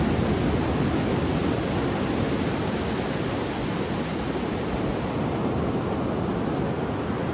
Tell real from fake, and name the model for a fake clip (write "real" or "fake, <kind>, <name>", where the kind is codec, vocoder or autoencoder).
real